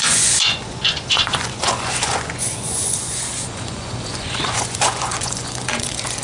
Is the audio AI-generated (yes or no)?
yes